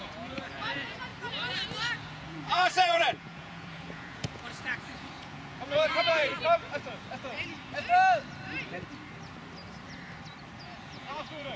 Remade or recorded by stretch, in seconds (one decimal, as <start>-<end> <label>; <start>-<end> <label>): 0.0-1.1 remade; 1.1-2.1 recorded; 2.1-6.2 remade; 6.2-10.6 recorded; 10.6-11.6 remade